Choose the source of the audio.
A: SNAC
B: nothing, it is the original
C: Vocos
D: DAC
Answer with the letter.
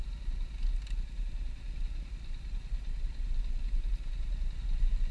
B